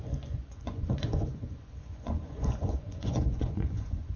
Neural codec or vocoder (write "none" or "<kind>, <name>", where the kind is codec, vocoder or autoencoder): vocoder, Vocos